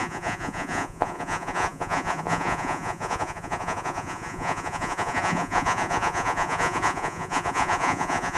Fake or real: fake